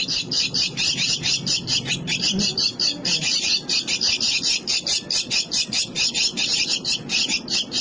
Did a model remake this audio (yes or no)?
no